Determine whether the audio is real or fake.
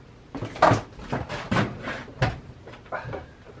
real